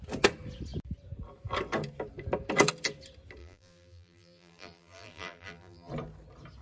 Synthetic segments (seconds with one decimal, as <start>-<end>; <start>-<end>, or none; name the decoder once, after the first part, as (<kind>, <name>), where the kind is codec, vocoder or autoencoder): 3.4-5.9 (vocoder, BigVGAN v2)